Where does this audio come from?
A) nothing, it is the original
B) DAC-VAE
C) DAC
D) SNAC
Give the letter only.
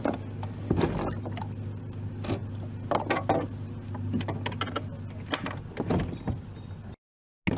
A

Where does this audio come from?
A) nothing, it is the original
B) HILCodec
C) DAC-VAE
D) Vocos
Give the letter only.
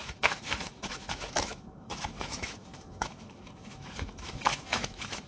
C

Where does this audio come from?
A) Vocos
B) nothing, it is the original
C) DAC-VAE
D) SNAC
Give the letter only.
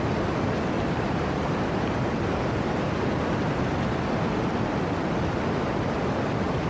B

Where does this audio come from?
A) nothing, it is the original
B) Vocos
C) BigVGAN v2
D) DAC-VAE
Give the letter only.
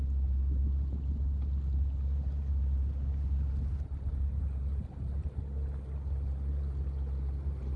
A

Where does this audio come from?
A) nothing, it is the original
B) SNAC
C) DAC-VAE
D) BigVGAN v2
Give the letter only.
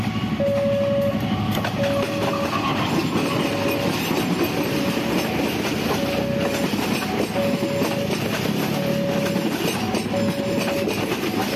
A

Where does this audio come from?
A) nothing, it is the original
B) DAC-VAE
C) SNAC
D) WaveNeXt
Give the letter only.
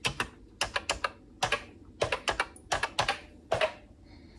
A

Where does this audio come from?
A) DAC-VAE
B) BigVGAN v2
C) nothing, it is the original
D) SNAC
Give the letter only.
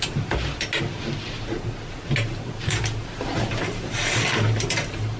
C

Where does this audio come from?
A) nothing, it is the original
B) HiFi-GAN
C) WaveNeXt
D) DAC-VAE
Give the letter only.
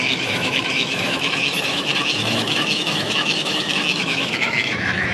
D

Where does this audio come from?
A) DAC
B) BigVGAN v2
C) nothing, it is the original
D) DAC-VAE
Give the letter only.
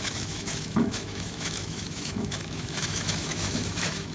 D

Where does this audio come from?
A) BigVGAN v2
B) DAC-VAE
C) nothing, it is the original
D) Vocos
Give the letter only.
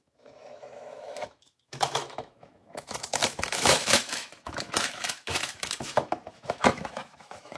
B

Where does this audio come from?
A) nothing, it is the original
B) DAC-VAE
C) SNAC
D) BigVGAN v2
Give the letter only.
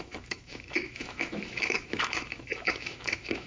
B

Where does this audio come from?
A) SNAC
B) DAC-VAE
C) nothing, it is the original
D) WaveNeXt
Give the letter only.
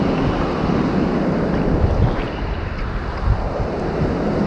C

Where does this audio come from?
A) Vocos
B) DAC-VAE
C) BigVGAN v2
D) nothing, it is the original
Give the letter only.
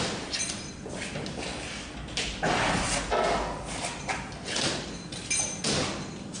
D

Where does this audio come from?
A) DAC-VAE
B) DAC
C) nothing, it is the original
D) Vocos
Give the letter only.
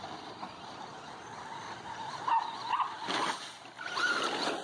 C